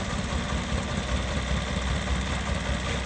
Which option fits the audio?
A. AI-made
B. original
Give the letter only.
B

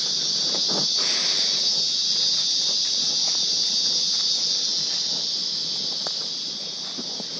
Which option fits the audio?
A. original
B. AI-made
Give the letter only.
A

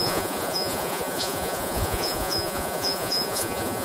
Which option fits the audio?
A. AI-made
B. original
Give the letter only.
A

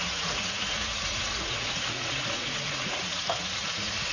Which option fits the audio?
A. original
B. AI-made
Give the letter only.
B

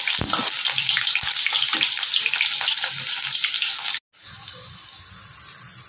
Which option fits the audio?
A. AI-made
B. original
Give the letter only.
B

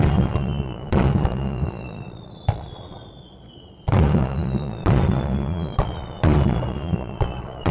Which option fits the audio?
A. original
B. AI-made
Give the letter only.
B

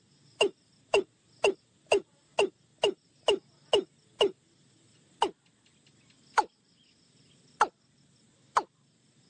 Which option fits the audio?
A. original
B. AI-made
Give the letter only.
A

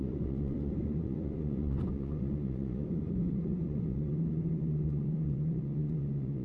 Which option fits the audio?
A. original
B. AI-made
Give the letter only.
B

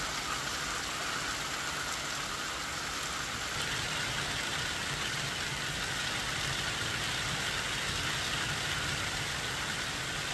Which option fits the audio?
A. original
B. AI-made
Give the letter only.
A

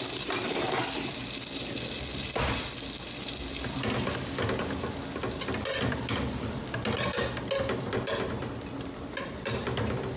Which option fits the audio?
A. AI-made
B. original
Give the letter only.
B